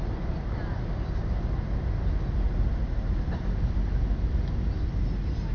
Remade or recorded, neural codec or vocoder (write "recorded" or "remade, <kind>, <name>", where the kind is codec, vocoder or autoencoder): recorded